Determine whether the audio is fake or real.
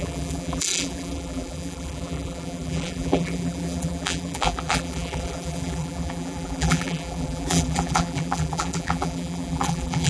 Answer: fake